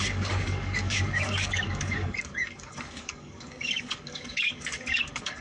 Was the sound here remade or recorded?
remade